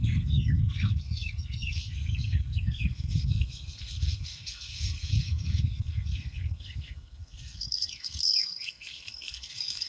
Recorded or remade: remade